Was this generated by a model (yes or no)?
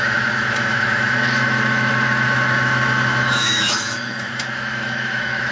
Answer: yes